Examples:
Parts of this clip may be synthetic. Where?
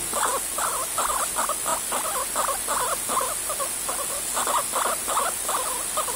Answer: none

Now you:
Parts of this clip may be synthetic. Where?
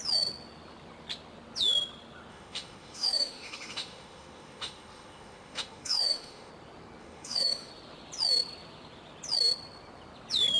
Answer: 2.3-6.5; 7.0-7.7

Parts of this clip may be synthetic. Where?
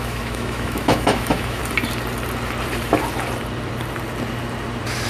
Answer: 0.0-1.6